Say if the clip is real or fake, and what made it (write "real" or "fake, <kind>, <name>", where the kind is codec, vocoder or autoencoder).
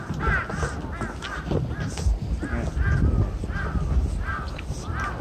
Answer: real